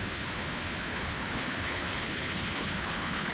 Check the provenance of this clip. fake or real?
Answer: fake